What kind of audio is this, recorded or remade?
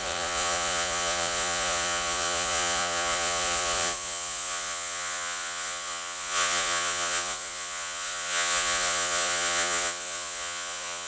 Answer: remade